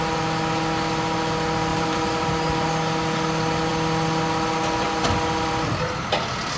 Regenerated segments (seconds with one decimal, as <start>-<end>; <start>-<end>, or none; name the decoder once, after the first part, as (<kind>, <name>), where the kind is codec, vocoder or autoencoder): 1.7-2.7 (vocoder, BigVGAN v2)